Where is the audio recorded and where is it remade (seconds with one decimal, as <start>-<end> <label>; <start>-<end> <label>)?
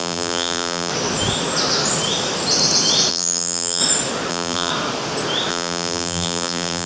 0.0-0.9 remade; 0.9-3.1 recorded; 3.1-3.8 remade; 3.8-4.3 recorded; 4.3-4.7 remade; 4.7-5.5 recorded; 5.5-6.9 remade